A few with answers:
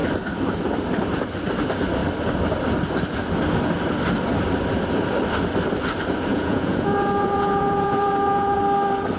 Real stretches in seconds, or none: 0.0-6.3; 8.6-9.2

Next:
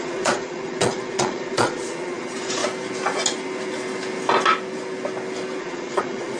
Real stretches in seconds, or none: 2.6-5.6

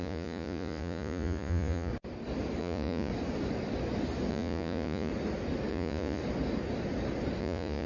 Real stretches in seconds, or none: 1.9-2.6; 3.1-4.3; 5.1-5.7; 6.2-7.4

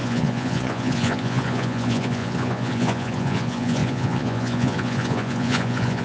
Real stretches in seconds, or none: none

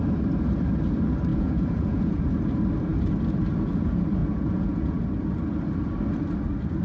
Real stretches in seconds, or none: 0.0-1.3; 2.2-4.2; 5.0-6.8

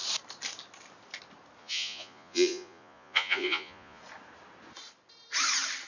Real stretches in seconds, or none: 0.0-1.6; 4.0-5.9

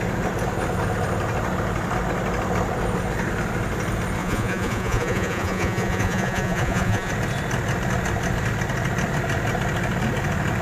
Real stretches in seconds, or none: 0.0-4.2; 7.1-10.6

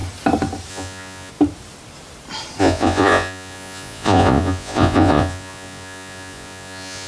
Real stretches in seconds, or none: 0.0-0.7; 1.3-2.6